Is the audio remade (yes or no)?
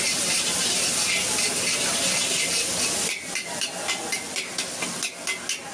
no